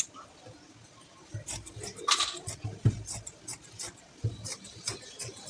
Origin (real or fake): real